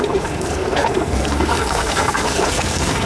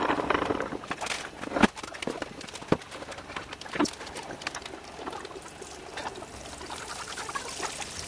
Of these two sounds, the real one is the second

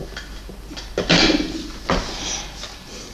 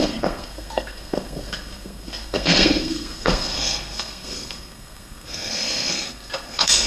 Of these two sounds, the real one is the first